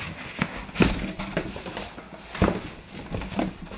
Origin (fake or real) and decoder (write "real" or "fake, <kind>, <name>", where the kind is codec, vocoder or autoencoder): real